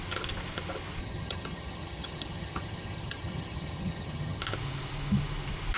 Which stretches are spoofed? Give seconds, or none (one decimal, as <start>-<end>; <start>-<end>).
1.0-4.4